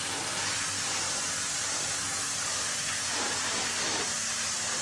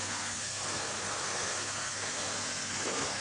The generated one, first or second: second